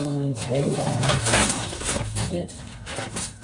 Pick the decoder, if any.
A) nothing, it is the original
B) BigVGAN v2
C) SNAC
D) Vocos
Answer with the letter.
C